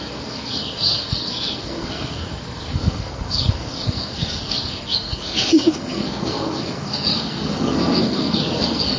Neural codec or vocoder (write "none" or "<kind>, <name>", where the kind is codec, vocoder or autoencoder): codec, SNAC